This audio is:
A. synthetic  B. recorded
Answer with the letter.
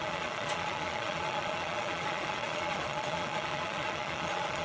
A